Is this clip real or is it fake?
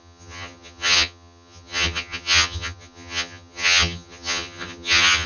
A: fake